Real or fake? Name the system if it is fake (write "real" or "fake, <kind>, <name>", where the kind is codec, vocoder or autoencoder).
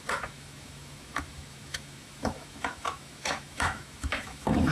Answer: fake, autoencoder, DAC-VAE